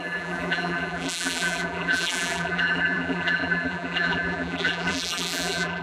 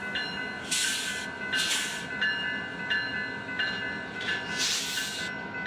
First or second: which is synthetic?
first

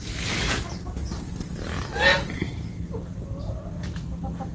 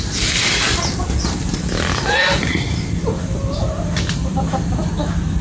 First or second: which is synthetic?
second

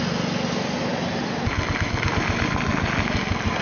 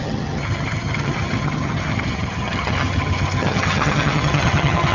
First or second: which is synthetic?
second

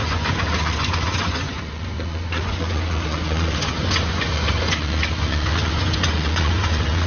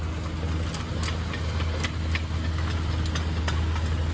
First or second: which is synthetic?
first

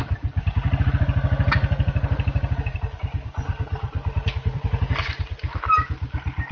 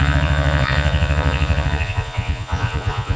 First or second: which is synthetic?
second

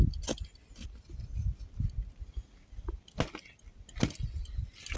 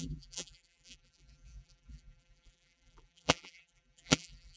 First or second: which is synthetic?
second